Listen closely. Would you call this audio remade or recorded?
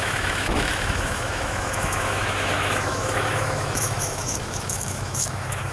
remade